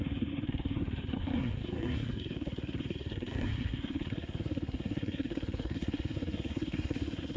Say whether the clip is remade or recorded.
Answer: remade